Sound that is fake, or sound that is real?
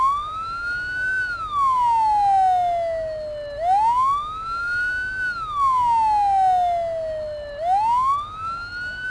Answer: real